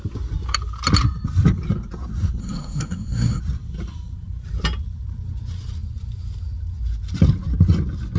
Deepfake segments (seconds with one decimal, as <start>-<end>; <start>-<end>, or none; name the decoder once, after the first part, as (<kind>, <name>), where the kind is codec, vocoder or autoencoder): 2.4-3.4 (codec, SNAC)